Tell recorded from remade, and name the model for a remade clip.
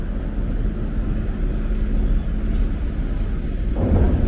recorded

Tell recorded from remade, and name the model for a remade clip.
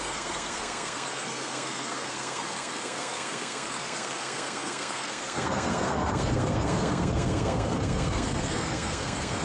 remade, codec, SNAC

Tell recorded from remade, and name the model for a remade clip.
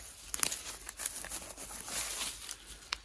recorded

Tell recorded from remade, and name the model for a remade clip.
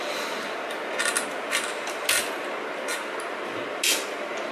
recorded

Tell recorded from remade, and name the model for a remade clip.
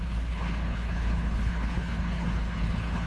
remade, codec, HILCodec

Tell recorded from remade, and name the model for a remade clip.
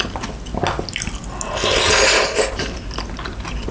recorded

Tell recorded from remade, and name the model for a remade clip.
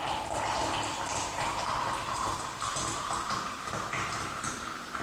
remade, vocoder, BigVGAN v2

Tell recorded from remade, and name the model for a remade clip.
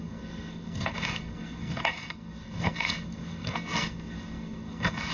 remade, codec, SNAC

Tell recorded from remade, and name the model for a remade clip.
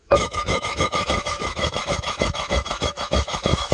remade, autoencoder, DAC-VAE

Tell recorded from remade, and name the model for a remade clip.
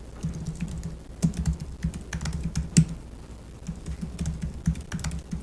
recorded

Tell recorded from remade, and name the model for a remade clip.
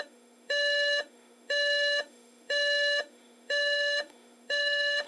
remade, autoencoder, DAC-VAE